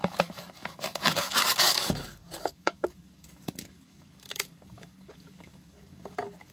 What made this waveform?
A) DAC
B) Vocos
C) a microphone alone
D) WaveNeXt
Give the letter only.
A